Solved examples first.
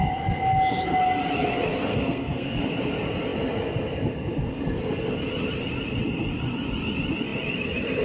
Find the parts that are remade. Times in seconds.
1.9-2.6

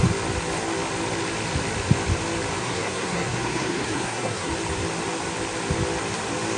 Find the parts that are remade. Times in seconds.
2.6-4.5